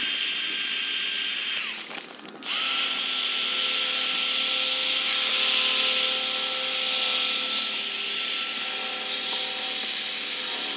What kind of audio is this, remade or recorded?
recorded